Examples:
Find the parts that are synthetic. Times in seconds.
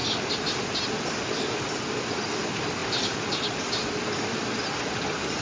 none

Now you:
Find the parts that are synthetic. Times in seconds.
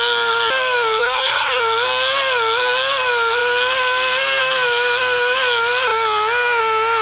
1.0-1.6 (codec, SNAC)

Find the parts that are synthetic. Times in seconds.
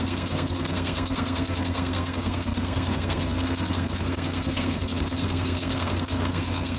0.0-6.8 (codec, SNAC)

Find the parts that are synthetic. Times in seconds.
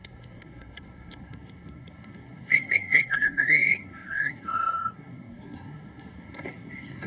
0.0-7.1 (codec, SNAC)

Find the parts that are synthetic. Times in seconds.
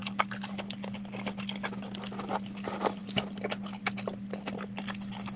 none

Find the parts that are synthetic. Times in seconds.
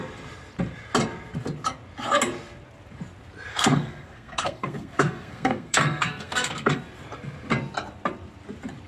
3.5-6.8 (codec, SNAC)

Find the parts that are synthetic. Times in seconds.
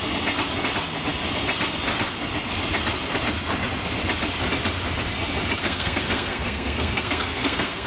5.6-7.9 (codec, SNAC)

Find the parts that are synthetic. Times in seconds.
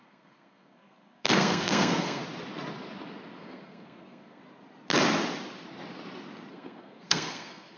0.0-2.2 (codec, SNAC); 3.4-4.4; 6.5-7.8